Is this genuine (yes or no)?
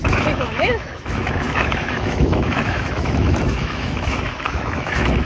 no